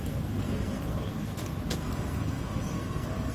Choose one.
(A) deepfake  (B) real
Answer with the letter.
A